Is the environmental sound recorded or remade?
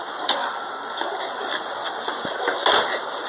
recorded